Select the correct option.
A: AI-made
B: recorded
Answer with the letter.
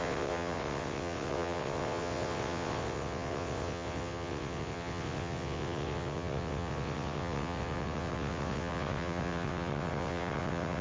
A